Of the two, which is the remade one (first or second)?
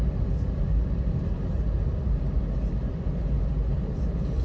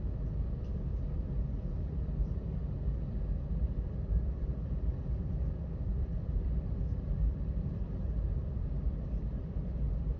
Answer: second